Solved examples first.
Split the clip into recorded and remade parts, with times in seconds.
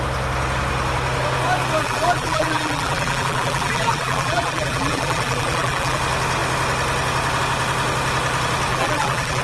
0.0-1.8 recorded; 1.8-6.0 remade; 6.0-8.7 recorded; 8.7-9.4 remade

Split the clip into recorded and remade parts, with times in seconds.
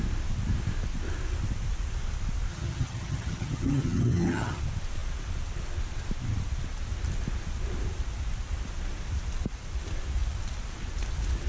0.0-2.5 recorded; 2.5-4.6 remade; 4.6-11.5 recorded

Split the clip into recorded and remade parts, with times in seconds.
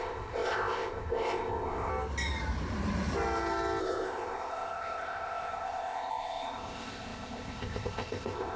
0.0-1.9 remade; 1.9-3.8 recorded; 3.8-8.6 remade